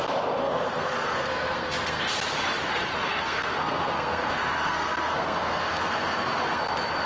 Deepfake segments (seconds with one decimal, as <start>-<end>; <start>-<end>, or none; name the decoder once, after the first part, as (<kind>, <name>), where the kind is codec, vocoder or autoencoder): 0.4-2.1 (codec, SNAC); 3.0-6.6